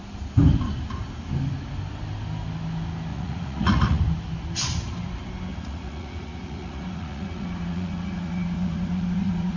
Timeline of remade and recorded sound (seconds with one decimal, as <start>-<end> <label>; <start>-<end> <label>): 0.0-3.1 recorded; 3.1-4.0 remade; 4.0-5.5 recorded; 5.5-9.6 remade